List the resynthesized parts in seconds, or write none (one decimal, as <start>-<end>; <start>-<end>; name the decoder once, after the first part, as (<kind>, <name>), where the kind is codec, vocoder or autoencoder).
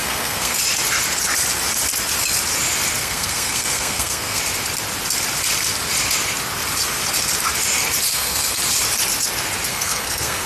0.0-0.6 (codec, SNAC); 3.0-4.4; 8.1-8.6; 9.7-10.5